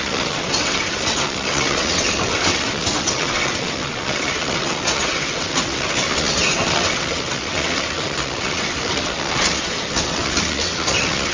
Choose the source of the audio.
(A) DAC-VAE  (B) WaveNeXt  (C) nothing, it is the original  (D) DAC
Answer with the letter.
B